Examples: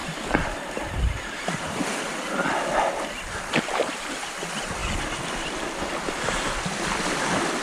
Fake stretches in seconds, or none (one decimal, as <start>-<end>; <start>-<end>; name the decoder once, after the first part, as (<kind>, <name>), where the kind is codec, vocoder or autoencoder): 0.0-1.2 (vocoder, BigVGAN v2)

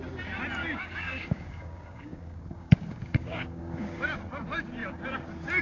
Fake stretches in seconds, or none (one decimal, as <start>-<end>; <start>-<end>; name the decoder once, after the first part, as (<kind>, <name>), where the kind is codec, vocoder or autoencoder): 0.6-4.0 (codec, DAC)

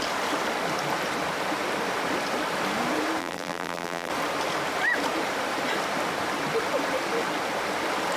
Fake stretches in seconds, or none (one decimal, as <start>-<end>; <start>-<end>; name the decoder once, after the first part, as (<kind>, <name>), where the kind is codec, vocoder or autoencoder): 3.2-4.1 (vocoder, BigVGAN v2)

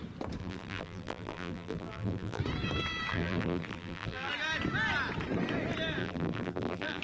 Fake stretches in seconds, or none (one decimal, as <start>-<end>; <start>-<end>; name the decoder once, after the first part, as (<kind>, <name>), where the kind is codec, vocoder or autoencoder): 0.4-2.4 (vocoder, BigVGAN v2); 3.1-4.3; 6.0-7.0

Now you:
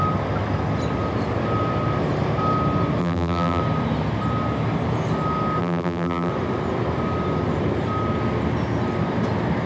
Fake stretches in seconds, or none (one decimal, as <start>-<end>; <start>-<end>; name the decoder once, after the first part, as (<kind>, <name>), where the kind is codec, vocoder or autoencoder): 3.0-3.6 (vocoder, BigVGAN v2); 5.6-6.3

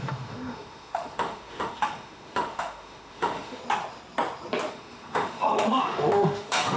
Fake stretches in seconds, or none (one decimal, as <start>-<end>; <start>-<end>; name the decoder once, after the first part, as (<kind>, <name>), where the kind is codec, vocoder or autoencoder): 0.0-3.6 (autoencoder, DAC-VAE); 4.7-6.8